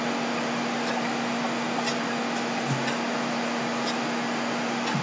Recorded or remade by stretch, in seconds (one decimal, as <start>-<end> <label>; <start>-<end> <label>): 0.0-5.0 recorded